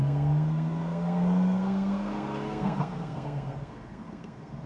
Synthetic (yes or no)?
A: yes